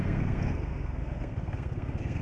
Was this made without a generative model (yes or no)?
no